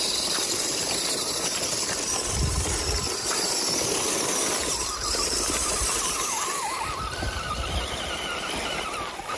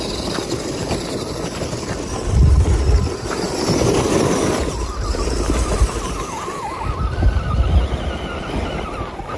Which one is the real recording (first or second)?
second